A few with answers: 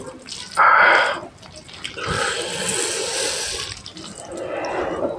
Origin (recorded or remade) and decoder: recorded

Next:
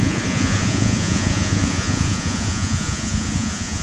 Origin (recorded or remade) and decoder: remade, vocoder, Vocos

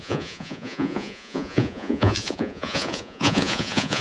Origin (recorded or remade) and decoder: remade, vocoder, Vocos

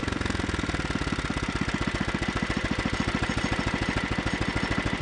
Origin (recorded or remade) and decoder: recorded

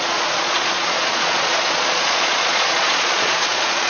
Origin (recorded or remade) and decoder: remade, vocoder, Vocos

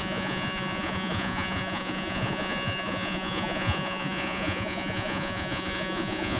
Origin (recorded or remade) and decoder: remade, vocoder, Vocos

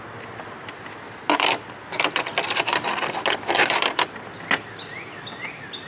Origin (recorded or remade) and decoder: recorded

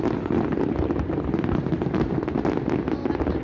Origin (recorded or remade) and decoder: recorded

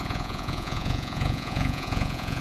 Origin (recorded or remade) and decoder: remade, vocoder, Vocos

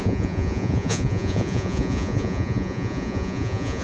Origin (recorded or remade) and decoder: remade, vocoder, Vocos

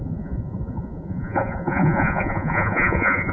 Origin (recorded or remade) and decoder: remade, vocoder, Vocos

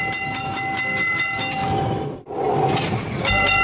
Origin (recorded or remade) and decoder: recorded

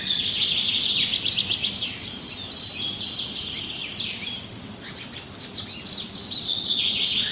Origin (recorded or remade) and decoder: recorded